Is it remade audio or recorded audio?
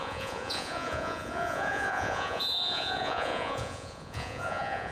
remade